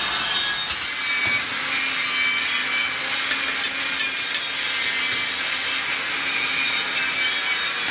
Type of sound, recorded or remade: recorded